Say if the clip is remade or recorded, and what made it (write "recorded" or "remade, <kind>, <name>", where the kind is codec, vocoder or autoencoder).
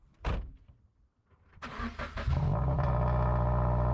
recorded